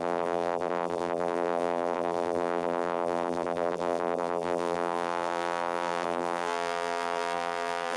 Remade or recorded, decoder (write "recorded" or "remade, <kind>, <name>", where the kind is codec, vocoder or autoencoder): remade, vocoder, BigVGAN v2